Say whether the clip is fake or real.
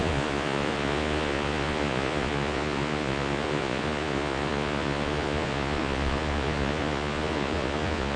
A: fake